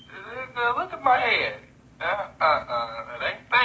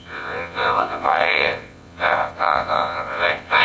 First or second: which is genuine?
first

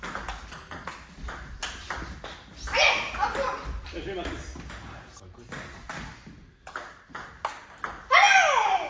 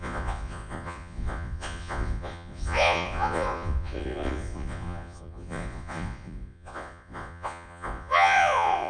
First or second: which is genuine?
first